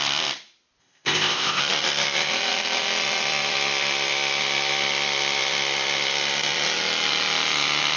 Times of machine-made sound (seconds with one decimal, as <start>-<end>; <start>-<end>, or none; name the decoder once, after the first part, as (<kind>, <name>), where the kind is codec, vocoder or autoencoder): 0.8-1.6 (codec, ZipCodec)